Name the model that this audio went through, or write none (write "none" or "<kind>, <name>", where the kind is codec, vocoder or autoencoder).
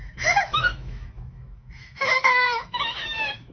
autoencoder, DAC-VAE